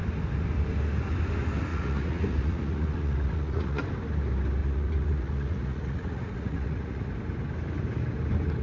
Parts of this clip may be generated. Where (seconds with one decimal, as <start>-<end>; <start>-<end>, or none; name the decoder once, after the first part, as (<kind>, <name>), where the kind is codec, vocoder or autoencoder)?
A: 1.7-3.8 (vocoder, Vocos); 4.6-7.1